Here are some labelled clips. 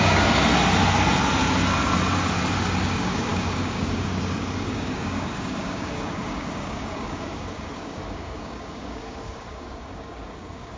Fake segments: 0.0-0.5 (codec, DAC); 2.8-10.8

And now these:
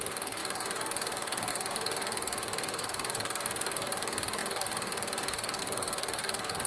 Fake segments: 0.0-6.7 (codec, DAC)